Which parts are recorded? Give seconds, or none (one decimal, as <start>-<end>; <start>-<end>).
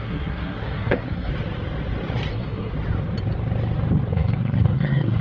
1.3-2.3; 2.7-4.1